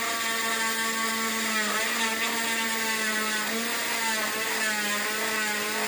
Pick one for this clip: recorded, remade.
recorded